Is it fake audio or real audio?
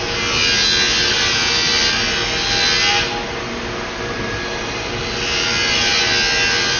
real